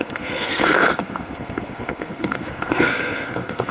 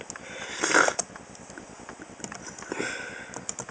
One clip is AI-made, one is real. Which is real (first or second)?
second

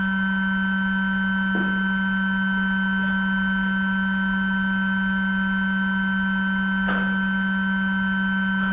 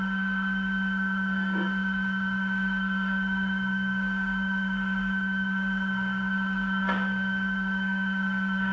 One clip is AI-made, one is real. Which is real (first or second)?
first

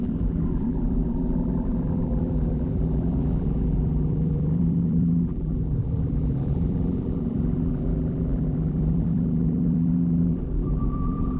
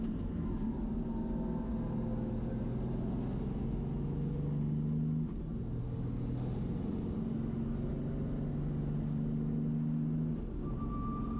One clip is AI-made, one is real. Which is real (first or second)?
second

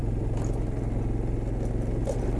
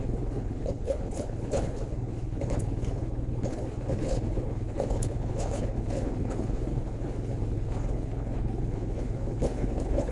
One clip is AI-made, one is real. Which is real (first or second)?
first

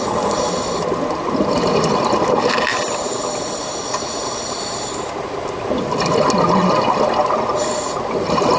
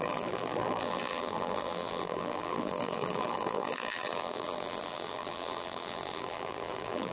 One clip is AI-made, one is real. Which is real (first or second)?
first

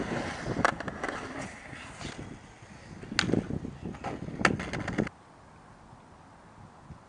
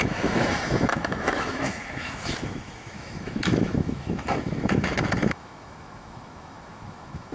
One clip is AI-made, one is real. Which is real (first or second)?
first